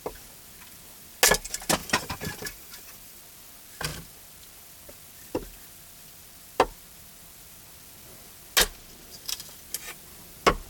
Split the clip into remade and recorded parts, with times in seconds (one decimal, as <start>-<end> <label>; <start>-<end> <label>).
0.0-1.8 recorded; 1.8-3.2 remade; 3.2-10.7 recorded